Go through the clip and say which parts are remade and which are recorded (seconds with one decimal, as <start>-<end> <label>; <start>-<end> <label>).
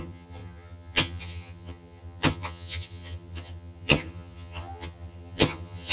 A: 0.0-5.9 remade